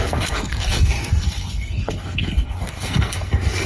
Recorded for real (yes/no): no